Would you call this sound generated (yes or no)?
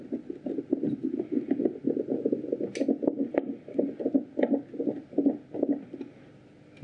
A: no